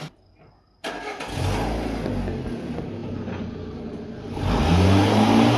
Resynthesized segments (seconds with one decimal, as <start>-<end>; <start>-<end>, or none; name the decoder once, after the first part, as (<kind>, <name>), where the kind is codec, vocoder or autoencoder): none